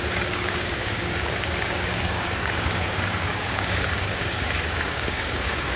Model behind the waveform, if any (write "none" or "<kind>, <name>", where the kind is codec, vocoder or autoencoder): codec, DAC